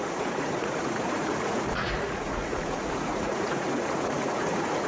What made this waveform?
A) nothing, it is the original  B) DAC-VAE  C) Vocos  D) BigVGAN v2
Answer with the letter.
C